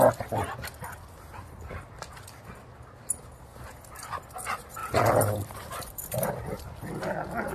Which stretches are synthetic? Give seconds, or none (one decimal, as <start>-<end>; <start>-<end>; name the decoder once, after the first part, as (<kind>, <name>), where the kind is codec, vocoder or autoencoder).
1.4-2.4 (vocoder, BigVGAN v2); 4.8-6.6